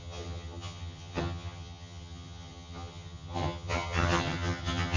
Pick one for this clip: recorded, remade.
remade